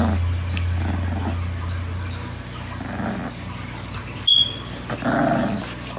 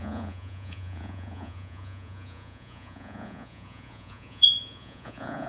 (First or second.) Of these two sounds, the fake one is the second